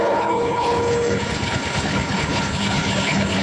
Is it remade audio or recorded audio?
remade